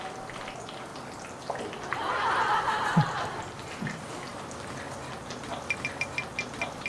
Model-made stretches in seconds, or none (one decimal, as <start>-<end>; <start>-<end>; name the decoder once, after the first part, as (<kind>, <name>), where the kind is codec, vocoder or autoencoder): none